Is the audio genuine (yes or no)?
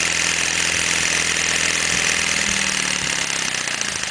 yes